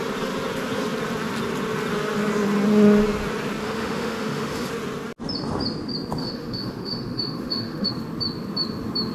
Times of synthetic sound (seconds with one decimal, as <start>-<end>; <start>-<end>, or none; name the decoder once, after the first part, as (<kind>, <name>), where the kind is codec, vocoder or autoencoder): 3.6-4.7 (autoencoder, DAC-VAE); 6.2-7.9